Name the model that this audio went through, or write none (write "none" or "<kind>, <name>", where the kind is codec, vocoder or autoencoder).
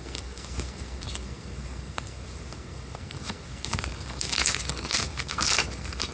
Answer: codec, SNAC